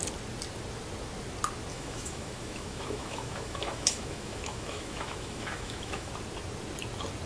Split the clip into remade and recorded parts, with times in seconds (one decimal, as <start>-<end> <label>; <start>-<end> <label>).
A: 0.0-1.7 recorded; 1.7-6.1 remade; 6.1-7.3 recorded